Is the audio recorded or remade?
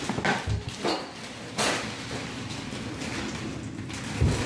recorded